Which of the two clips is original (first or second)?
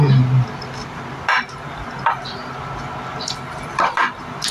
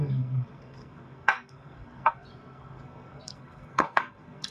first